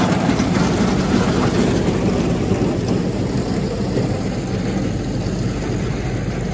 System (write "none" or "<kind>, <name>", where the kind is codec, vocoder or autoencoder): none